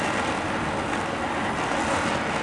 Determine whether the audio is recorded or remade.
recorded